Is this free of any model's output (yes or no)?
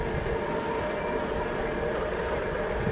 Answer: yes